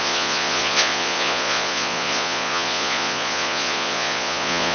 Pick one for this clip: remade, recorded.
remade